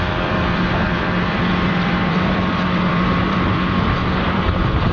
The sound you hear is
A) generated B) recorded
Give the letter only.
A